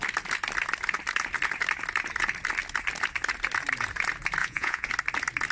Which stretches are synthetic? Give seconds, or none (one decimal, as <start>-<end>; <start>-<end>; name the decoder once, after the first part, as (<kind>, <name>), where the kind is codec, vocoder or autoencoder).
4.4-4.9 (vocoder, Vocos)